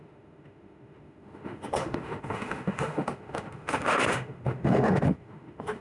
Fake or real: fake